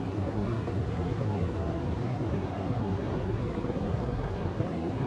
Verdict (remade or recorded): remade